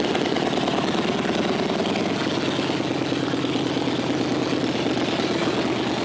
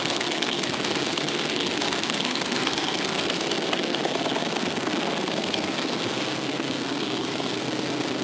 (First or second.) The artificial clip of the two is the second